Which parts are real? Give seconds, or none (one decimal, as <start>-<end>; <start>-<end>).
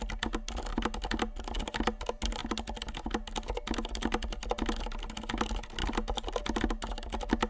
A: 0.0-7.5